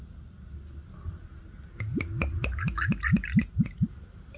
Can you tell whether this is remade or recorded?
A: recorded